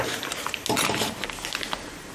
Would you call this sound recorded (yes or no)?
yes